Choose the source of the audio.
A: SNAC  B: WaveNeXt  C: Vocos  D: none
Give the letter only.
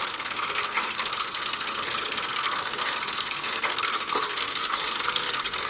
A